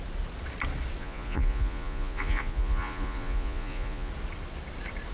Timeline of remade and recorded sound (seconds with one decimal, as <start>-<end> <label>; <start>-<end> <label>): 0.0-1.0 recorded; 1.0-4.1 remade; 4.1-5.1 recorded